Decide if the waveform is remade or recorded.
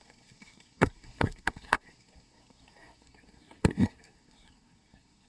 remade